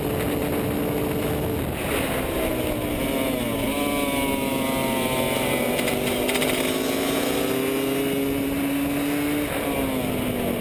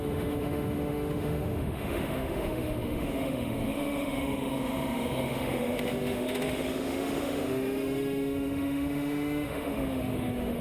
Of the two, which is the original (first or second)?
first